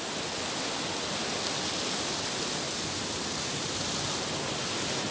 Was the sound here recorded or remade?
recorded